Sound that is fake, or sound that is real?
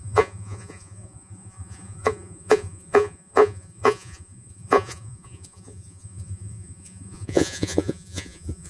fake